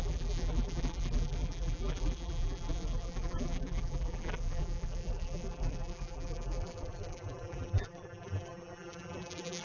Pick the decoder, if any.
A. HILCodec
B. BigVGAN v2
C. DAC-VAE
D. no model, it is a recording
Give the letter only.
B